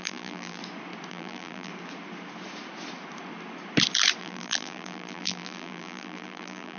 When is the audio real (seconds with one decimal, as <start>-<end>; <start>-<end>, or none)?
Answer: 0.6-1.1; 1.7-4.2